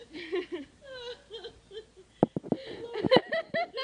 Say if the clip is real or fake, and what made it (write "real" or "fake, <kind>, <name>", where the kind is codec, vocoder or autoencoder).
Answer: real